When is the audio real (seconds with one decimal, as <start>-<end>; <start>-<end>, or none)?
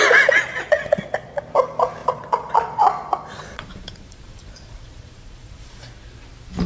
0.0-0.5; 1.4-2.0; 5.8-6.7